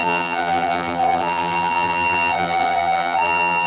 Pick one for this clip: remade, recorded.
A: remade